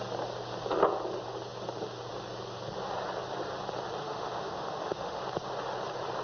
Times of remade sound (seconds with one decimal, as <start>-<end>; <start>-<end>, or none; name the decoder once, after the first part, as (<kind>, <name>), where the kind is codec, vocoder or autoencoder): 4.0-5.2 (autoencoder, DAC-VAE)